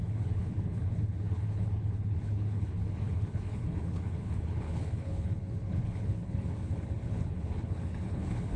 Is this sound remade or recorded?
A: remade